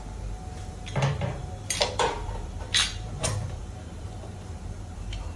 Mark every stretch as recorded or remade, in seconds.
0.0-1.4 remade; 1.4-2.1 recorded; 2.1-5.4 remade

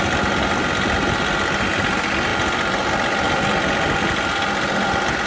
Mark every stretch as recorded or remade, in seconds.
0.0-2.3 recorded; 2.3-4.1 remade; 4.1-5.3 recorded

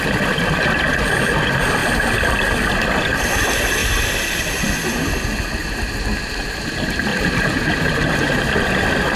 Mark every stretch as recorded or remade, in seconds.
0.0-3.8 recorded; 3.8-4.4 remade; 4.4-5.6 recorded; 5.6-6.2 remade; 6.2-7.1 recorded; 7.1-9.2 remade

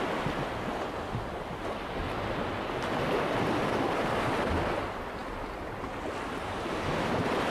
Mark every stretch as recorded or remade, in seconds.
0.0-7.5 recorded

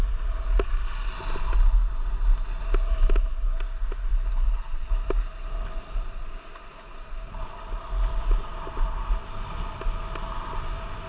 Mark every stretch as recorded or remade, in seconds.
0.0-11.1 recorded

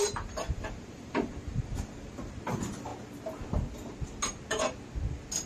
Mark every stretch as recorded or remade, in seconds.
0.0-2.9 remade; 2.9-5.5 recorded